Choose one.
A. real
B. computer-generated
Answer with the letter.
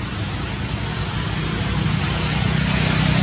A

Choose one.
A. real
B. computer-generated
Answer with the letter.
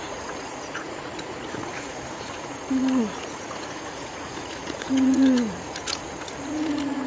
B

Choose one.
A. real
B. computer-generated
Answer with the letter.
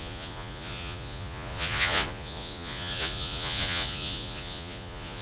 B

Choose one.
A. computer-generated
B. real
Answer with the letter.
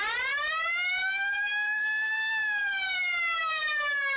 A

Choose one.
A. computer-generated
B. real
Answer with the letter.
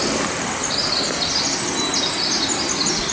B